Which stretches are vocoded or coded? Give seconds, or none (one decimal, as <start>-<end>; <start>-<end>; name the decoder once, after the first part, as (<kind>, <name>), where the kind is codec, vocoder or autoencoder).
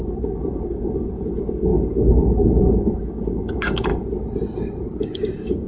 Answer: 0.0-3.9 (codec, DAC); 5.0-5.7